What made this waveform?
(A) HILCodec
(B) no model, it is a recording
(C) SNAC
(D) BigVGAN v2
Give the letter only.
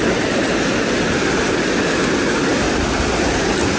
B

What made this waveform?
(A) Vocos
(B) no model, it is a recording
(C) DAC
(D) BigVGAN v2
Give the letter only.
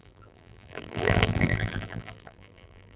D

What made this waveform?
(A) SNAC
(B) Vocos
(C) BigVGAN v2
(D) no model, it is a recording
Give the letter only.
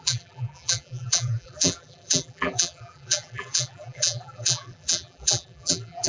C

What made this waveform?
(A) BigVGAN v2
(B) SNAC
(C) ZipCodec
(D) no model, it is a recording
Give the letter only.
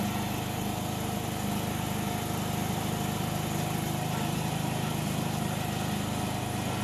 D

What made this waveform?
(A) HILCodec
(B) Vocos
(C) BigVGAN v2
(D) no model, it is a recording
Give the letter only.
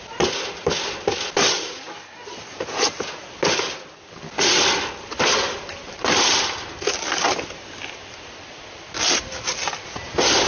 D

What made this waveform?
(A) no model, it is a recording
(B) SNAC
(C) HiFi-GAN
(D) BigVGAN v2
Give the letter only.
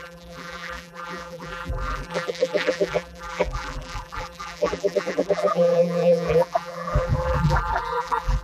D